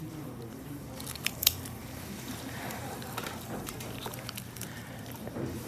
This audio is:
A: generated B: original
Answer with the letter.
A